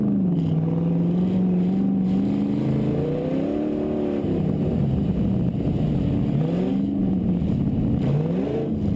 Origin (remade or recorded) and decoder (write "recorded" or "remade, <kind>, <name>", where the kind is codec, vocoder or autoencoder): recorded